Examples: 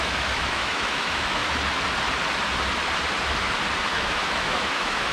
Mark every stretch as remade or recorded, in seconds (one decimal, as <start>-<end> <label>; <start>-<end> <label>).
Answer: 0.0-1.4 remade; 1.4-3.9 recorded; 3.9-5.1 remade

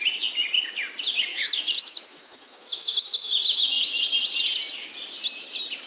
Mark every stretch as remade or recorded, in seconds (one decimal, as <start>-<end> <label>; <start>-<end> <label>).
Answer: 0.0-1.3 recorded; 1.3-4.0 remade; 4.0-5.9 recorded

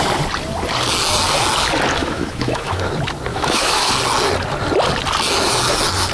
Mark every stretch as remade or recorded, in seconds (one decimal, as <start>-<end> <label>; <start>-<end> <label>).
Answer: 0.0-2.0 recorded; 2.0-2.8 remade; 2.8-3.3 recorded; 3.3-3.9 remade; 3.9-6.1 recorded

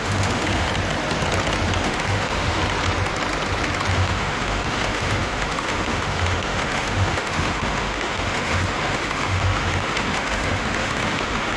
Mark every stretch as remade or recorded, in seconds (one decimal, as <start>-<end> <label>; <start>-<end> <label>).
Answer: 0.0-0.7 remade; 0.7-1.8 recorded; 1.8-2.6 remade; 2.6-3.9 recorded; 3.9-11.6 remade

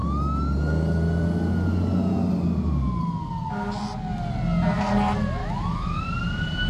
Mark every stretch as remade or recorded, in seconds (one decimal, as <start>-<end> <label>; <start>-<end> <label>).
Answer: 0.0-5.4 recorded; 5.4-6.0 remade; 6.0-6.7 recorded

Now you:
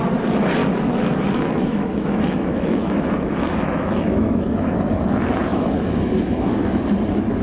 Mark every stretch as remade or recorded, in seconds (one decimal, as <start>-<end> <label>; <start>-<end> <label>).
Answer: 0.0-0.6 recorded; 0.6-5.0 remade; 5.0-5.5 recorded; 5.5-6.8 remade; 6.8-7.4 recorded